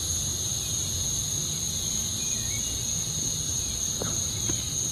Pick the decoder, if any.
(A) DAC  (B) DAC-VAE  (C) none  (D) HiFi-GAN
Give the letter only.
C